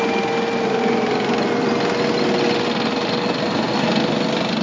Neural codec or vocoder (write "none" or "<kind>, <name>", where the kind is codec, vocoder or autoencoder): none